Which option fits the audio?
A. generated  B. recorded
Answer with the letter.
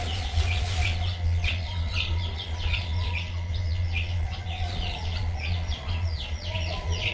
A